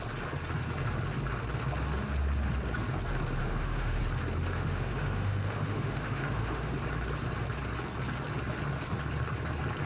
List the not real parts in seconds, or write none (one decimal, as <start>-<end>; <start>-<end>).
3.4-4.0; 4.5-6.7